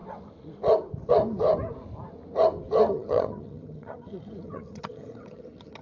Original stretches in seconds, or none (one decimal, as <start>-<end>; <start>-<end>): 0.0-2.9